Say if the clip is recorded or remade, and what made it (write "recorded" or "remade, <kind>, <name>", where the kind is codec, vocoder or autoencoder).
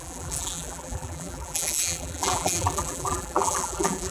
remade, vocoder, BigVGAN v2